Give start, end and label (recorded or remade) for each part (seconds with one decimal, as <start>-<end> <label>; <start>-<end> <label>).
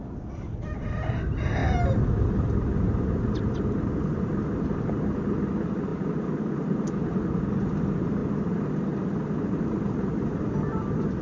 0.0-11.2 recorded